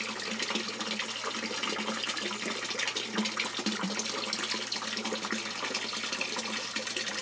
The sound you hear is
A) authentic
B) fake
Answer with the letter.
A